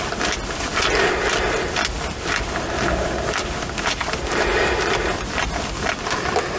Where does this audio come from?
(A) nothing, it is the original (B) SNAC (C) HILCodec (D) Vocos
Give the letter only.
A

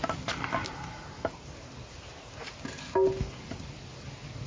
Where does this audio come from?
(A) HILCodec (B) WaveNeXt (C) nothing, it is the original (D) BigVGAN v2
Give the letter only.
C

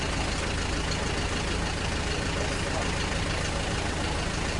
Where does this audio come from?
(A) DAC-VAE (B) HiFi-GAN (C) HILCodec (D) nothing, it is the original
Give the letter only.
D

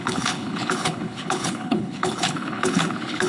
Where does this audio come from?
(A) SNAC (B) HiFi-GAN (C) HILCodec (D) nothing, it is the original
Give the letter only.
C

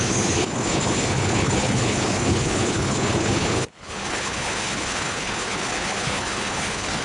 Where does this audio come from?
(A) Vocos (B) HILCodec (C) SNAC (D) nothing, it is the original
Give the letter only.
B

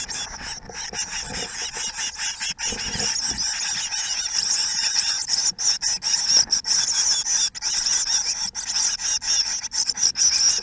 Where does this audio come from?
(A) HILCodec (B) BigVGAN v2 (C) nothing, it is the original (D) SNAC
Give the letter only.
C